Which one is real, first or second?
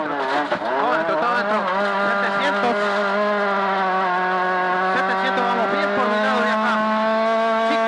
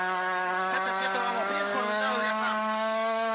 first